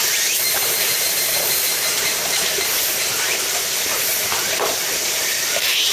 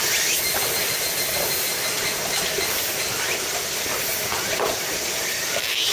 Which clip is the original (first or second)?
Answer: second